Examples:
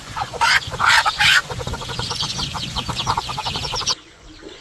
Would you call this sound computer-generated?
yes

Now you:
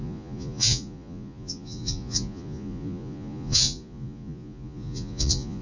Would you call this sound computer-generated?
yes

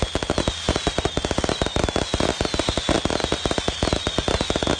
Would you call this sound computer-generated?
no